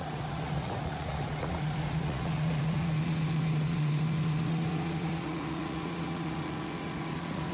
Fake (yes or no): yes